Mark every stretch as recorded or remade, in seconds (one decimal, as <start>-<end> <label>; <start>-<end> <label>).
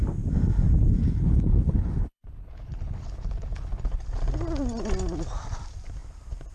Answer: 0.0-1.0 recorded; 1.0-4.0 remade; 4.0-6.5 recorded